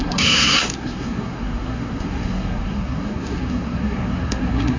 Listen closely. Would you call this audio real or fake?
fake